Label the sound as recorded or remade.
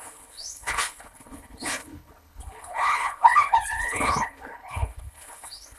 remade